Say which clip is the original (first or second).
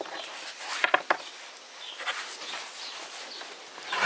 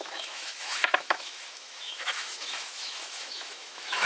first